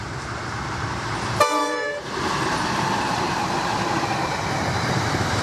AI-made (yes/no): yes